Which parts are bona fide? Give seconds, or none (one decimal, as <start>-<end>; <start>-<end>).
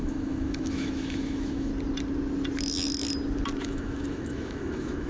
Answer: 1.7-3.6